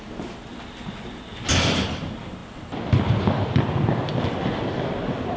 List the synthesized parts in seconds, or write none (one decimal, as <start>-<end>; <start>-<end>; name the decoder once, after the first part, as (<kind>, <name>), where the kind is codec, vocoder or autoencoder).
none